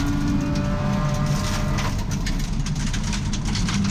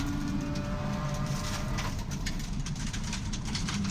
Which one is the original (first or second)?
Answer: first